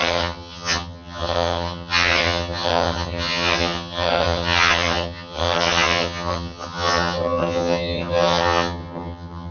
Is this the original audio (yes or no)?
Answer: no